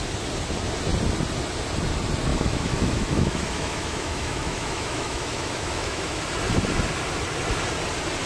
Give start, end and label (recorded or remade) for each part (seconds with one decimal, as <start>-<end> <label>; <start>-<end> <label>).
0.0-2.3 recorded; 2.3-6.2 remade; 6.2-8.3 recorded